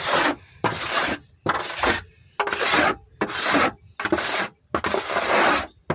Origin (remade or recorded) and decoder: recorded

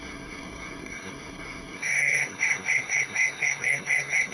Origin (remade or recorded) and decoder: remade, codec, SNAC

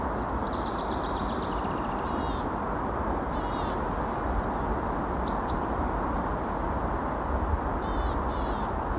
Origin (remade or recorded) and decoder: recorded